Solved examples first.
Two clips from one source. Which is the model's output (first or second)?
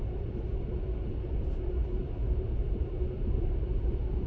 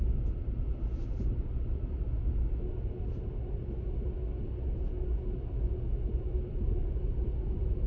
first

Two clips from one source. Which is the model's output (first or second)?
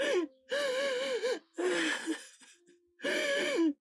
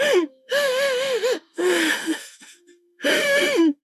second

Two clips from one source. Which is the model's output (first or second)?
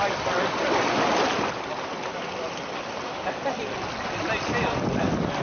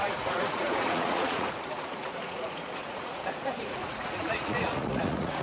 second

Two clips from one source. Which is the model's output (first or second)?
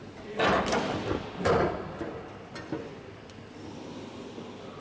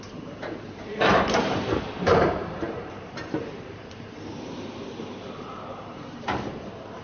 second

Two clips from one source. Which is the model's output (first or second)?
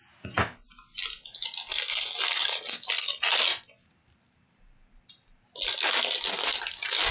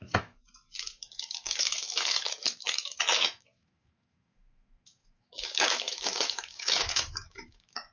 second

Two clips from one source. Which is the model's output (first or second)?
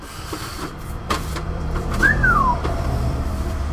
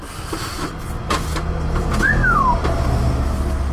first